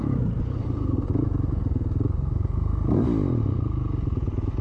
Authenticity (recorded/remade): recorded